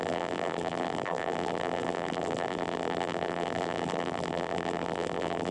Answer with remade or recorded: remade